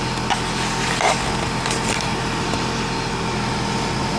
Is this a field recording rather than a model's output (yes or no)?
yes